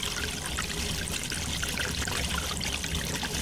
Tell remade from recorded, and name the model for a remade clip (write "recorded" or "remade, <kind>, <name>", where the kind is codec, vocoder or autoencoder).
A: recorded